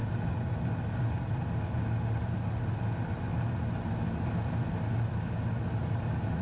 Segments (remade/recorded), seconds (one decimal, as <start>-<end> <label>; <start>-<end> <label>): 0.0-6.4 recorded

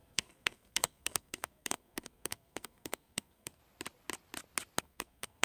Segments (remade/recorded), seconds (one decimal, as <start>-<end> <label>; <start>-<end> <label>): 0.0-3.6 remade; 3.6-4.8 recorded; 4.8-5.4 remade

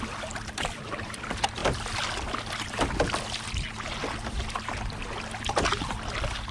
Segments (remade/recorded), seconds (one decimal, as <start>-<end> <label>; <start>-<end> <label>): 0.0-1.6 remade; 1.6-5.5 recorded; 5.5-6.5 remade

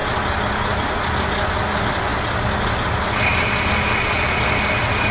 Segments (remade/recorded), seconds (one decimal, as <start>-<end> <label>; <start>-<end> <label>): 0.0-5.1 recorded

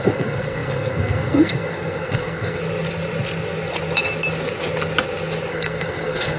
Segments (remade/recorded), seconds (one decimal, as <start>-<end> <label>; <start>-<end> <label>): 0.0-2.6 remade; 2.6-5.5 recorded; 5.5-6.4 remade

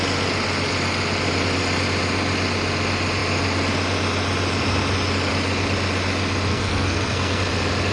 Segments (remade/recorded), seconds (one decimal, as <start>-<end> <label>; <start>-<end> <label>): 0.0-6.5 recorded; 6.5-7.4 remade; 7.4-7.9 recorded

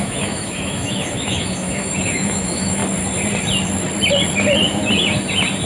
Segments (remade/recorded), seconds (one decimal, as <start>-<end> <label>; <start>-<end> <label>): 0.0-2.8 remade; 2.8-5.7 recorded